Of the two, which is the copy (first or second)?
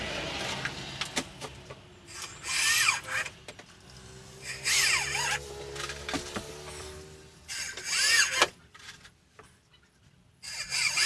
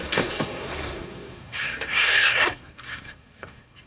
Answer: second